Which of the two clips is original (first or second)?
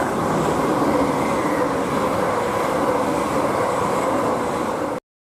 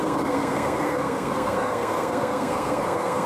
first